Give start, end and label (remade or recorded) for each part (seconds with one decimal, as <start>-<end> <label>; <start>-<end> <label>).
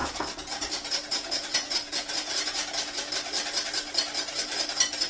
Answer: 0.0-3.1 remade; 3.1-5.1 recorded